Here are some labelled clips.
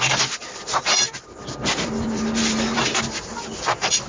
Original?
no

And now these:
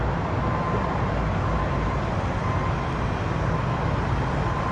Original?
yes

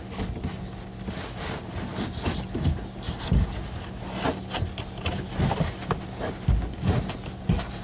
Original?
yes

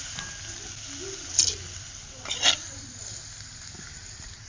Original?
yes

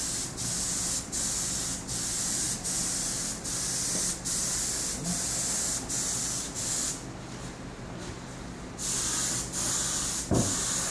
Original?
yes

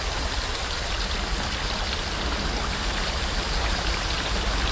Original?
yes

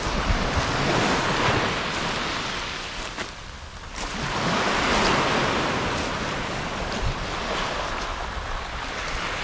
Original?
yes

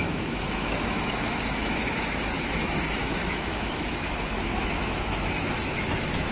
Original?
no